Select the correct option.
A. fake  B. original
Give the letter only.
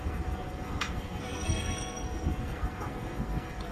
A